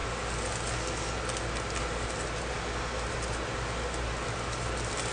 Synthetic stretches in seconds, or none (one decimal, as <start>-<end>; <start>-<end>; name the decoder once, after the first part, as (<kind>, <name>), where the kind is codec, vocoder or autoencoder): none